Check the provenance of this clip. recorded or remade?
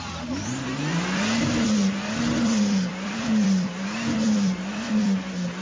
remade